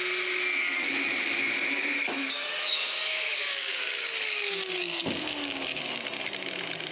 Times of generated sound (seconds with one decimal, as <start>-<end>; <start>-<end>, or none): 2.2-5.8